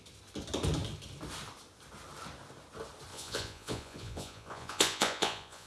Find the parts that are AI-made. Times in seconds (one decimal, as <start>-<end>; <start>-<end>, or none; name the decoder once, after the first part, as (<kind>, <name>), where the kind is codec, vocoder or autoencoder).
3.1-5.7 (vocoder, Vocos)